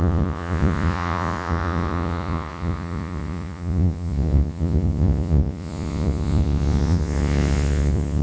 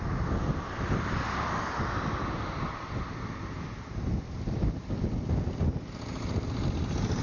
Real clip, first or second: second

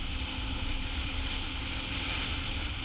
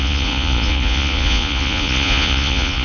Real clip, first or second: first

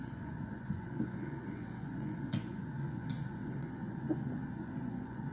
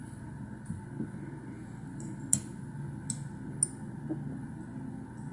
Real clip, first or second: second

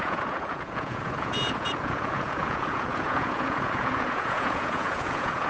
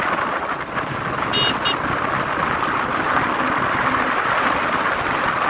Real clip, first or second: second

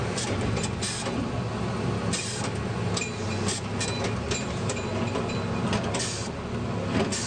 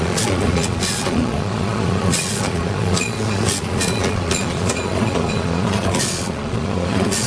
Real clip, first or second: first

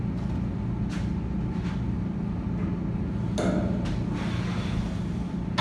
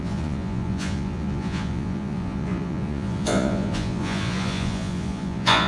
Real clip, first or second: first